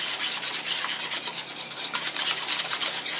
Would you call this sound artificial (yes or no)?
no